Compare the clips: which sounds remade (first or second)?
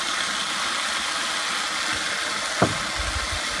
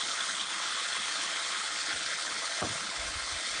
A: second